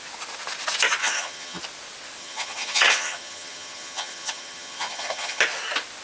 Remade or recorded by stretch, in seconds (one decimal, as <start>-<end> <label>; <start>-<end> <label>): 0.0-1.0 recorded; 1.0-1.6 remade; 1.6-2.2 recorded; 2.2-5.4 remade; 5.4-6.0 recorded